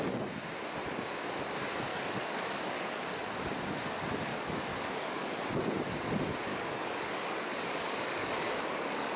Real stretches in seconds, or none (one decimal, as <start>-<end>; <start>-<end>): 0.0-1.9; 3.4-4.3; 5.4-6.5